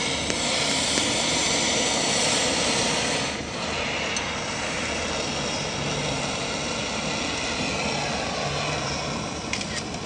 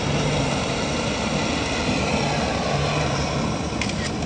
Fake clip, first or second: second